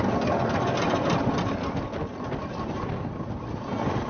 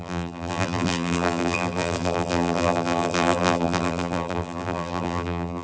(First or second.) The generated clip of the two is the second